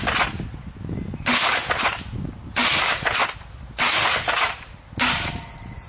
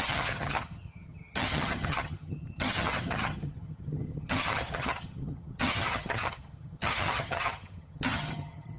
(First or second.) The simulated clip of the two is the second